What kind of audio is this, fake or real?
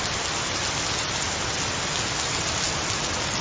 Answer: real